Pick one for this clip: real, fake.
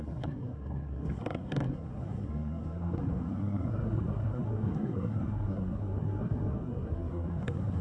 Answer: fake